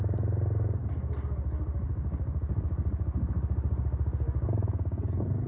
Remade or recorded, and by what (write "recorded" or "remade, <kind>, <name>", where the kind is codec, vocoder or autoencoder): recorded